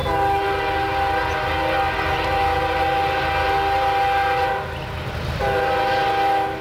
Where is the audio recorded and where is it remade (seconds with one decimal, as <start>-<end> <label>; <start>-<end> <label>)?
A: 0.0-6.6 recorded